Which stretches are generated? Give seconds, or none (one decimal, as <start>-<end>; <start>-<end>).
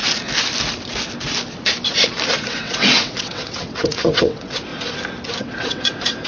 2.5-4.7; 5.4-6.3